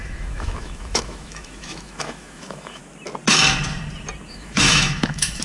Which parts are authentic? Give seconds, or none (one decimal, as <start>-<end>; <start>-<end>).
2.8-4.3